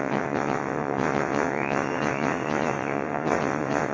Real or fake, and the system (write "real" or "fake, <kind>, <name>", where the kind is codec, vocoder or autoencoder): fake, vocoder, WaveNeXt